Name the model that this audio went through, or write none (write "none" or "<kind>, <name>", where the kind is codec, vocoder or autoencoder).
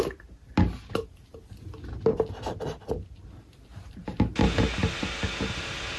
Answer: none